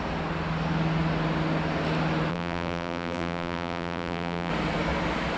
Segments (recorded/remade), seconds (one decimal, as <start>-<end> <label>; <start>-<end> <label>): 0.0-2.3 recorded; 2.3-4.5 remade; 4.5-5.4 recorded

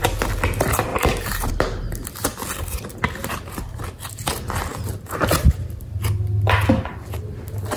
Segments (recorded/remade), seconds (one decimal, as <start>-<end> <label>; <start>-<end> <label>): 0.0-0.9 recorded; 0.9-1.5 remade; 1.5-3.2 recorded; 3.2-3.8 remade; 3.8-4.7 recorded; 4.7-5.7 remade; 5.7-7.8 recorded

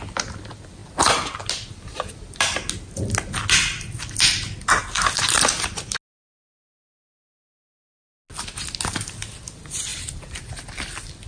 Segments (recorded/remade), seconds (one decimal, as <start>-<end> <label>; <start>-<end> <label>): 0.0-9.9 recorded; 9.9-10.5 remade; 10.5-11.3 recorded

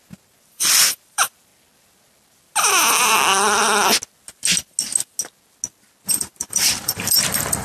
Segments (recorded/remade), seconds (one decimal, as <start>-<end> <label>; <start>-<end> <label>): 0.0-1.5 remade; 1.5-6.1 recorded; 6.1-7.6 remade

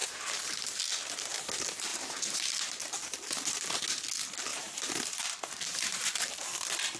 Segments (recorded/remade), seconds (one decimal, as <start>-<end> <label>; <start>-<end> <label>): 0.0-0.8 remade; 0.8-1.9 recorded; 1.9-3.8 remade; 3.8-4.5 recorded; 4.5-6.3 remade; 6.3-7.0 recorded

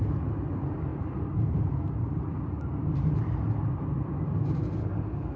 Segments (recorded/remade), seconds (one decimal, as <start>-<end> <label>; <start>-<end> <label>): 0.0-0.9 recorded; 0.9-4.1 remade; 4.1-5.4 recorded

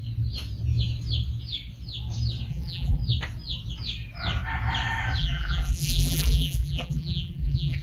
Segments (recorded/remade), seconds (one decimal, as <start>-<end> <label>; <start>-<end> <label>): 0.0-2.5 recorded; 2.5-3.0 remade; 3.0-5.2 recorded; 5.2-7.8 remade

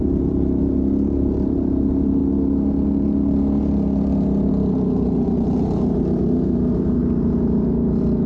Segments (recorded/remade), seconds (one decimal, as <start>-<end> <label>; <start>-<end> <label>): 0.0-2.2 remade; 2.2-4.5 recorded; 4.5-7.0 remade; 7.0-8.3 recorded